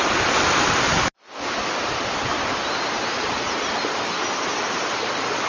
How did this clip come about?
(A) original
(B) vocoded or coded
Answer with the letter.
A